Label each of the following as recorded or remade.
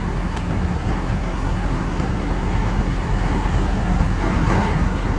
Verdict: remade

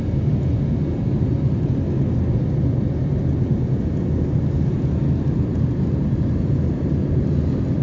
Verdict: recorded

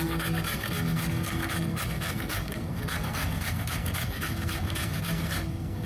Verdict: remade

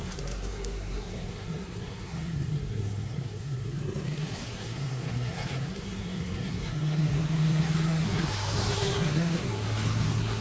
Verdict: remade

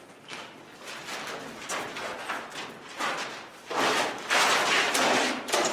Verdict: recorded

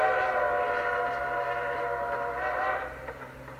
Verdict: recorded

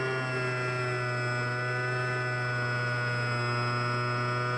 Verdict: recorded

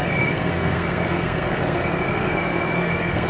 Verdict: remade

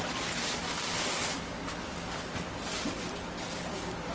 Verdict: recorded